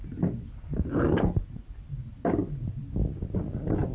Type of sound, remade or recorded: recorded